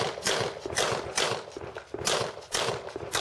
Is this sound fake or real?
real